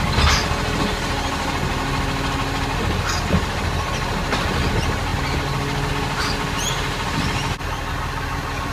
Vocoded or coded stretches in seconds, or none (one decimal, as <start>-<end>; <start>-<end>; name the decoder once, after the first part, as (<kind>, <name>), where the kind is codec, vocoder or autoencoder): none